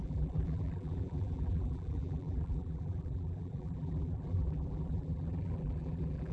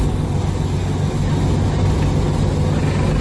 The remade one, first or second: first